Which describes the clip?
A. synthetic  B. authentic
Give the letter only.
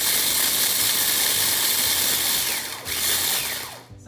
B